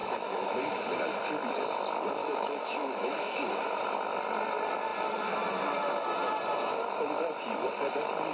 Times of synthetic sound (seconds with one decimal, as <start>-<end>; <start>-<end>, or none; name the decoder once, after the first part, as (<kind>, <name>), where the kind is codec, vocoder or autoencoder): 0.0-0.7 (autoencoder, DAC-VAE); 2.2-3.7